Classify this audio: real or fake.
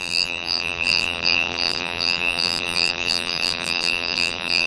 fake